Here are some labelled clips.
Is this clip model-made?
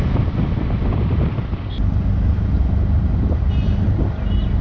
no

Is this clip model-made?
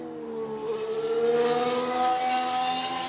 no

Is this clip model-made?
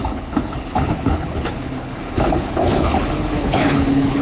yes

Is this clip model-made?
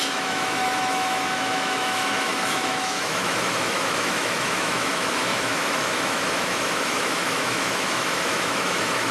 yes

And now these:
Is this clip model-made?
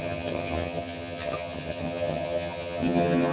yes